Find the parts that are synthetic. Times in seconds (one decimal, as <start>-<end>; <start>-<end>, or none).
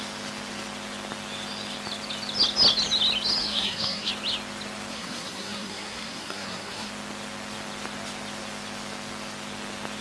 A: 3.4-4.1; 4.9-6.9